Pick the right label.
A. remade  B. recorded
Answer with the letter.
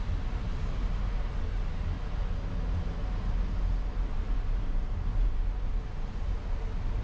B